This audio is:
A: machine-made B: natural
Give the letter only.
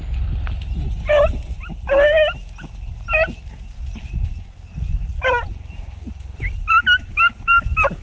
B